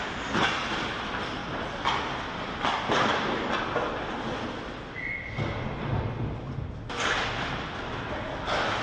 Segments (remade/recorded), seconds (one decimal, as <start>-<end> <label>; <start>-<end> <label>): 0.0-8.8 recorded